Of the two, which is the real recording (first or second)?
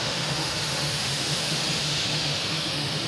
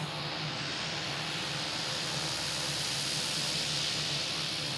second